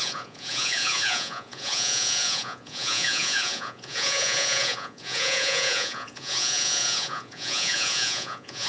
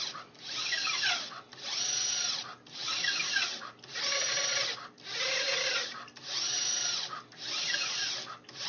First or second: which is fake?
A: first